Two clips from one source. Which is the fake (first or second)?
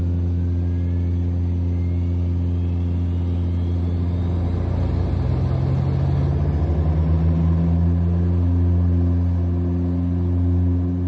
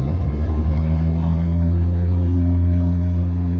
second